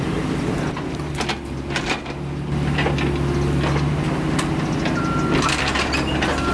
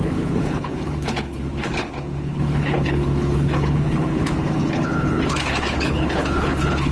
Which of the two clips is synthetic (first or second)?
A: second